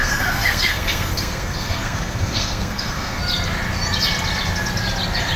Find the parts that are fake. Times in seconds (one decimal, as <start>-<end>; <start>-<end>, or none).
0.0-3.2